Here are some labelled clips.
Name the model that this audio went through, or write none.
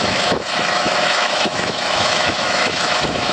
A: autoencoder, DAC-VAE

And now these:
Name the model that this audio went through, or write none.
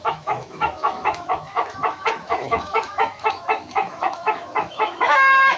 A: autoencoder, DAC-VAE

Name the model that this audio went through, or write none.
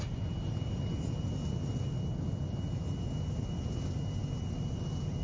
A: none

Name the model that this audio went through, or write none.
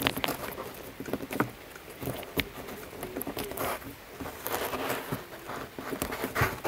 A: none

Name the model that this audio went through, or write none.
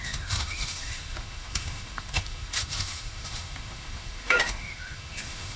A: autoencoder, DAC-VAE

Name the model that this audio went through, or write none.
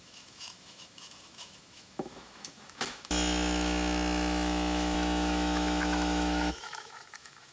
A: autoencoder, DAC-VAE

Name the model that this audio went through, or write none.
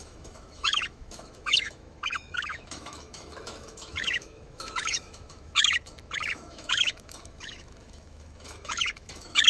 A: autoencoder, DAC-VAE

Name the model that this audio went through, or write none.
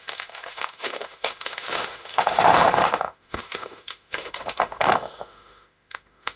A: autoencoder, DAC-VAE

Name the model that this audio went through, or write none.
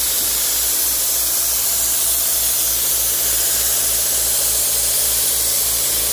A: none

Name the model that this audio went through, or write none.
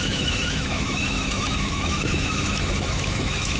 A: autoencoder, DAC-VAE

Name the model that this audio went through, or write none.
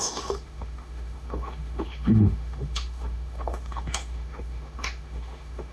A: autoencoder, DAC-VAE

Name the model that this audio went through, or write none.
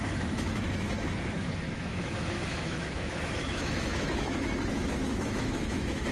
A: autoencoder, DAC-VAE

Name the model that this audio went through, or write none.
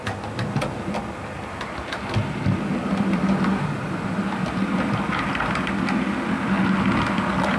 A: none